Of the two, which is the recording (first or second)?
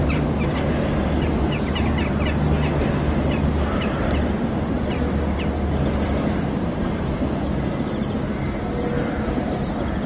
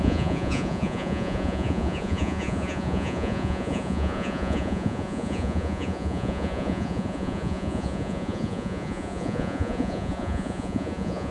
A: first